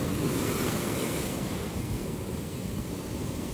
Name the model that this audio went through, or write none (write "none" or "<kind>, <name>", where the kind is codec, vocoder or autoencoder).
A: codec, SNAC